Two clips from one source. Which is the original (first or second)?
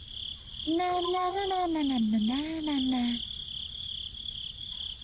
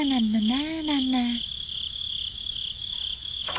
first